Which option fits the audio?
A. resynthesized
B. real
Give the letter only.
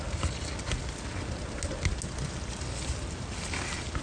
B